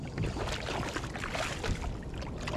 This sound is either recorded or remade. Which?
recorded